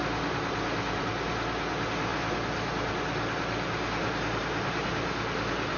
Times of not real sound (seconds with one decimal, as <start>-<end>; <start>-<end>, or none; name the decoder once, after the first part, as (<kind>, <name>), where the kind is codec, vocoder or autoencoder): none